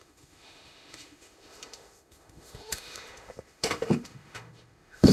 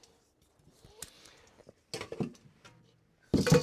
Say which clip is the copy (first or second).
first